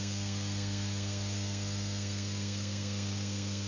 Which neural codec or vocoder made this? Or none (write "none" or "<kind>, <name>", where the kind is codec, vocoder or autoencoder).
codec, SNAC